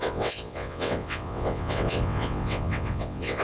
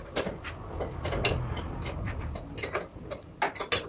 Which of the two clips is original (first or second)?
second